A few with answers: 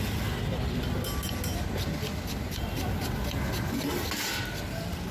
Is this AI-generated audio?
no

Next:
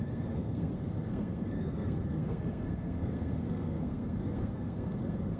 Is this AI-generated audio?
yes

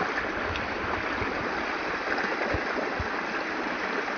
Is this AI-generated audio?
no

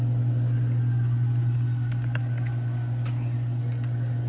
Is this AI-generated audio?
no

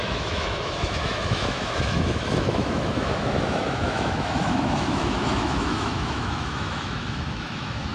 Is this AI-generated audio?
yes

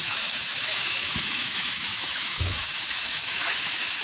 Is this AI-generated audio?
yes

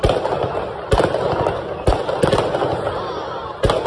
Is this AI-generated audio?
no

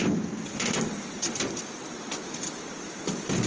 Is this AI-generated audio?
yes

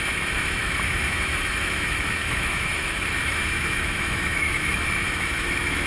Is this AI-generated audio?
yes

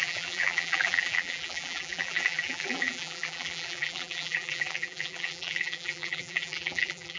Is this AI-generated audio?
yes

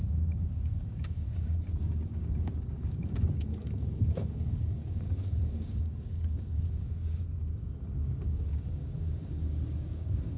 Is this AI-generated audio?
yes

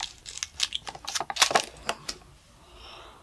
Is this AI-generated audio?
no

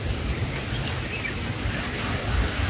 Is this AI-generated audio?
no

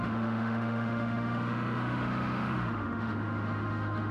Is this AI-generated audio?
yes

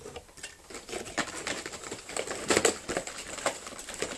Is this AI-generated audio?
no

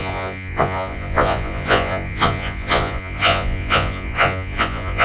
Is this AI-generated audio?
yes